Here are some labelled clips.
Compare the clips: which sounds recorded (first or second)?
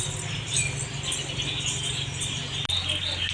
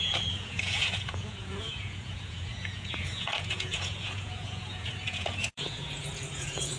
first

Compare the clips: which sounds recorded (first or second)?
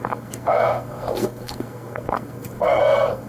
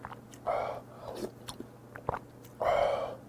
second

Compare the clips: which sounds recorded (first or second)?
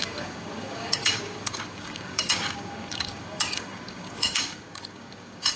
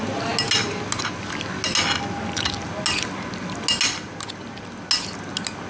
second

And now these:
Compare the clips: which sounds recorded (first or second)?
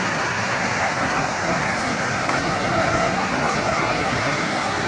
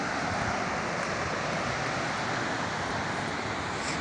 second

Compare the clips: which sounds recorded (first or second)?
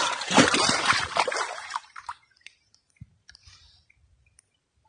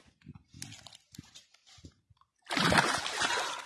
second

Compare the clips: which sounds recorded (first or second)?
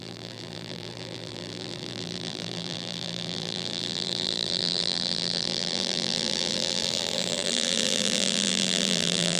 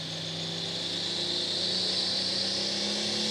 second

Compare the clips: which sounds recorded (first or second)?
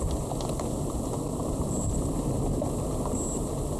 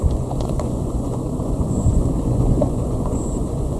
first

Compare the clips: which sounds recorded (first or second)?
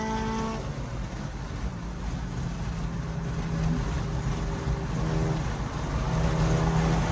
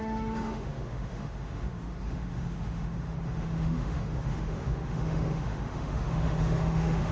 first